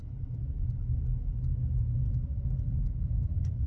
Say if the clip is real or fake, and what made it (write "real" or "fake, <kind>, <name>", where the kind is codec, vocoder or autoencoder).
real